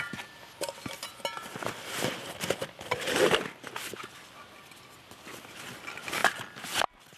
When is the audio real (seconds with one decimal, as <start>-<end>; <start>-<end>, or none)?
0.0-7.2